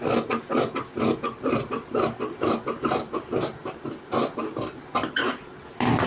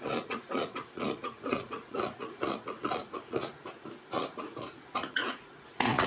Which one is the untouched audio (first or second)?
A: first